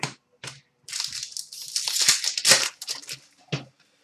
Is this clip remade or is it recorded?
recorded